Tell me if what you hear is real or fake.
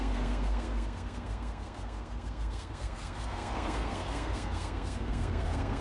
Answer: fake